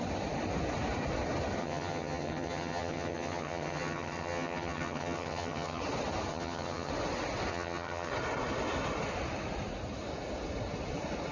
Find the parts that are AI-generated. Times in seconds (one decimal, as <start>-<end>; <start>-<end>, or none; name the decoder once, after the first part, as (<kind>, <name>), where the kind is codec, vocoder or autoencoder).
1.6-5.8 (vocoder, HiFi-GAN); 6.3-6.9; 7.5-8.1